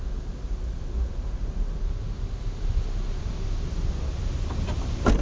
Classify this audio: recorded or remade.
recorded